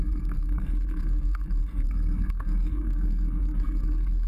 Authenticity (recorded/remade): remade